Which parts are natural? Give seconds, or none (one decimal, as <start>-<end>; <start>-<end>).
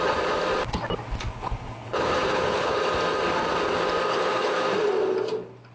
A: 0.0-1.3; 2.8-4.1; 4.6-5.7